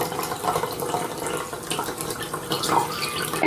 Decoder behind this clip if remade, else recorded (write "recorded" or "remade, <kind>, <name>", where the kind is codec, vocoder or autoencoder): recorded